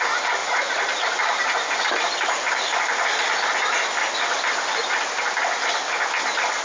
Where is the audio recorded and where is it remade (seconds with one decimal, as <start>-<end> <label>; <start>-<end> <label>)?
0.0-6.6 recorded